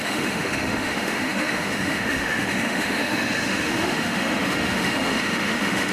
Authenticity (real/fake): fake